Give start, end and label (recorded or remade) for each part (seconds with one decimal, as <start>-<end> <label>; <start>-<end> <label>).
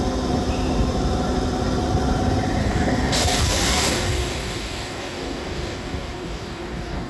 0.0-2.6 recorded; 2.6-7.1 remade